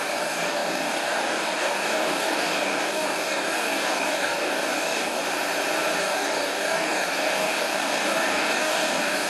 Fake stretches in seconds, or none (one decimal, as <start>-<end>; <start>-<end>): 0.0-5.2; 6.0-9.3

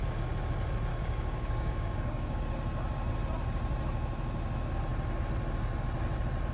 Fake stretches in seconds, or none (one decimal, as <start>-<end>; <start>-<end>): 0.9-2.4

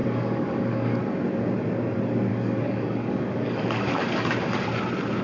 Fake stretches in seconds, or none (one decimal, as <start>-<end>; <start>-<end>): 0.0-1.0; 2.3-3.9

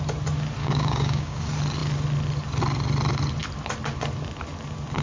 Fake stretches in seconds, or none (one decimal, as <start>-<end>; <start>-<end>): 0.6-1.4

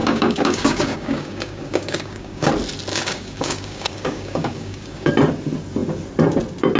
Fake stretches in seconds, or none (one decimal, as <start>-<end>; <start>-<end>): 0.0-2.5; 2.9-5.1

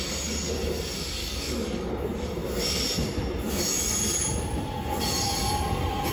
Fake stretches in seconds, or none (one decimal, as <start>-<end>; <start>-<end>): 1.2-1.9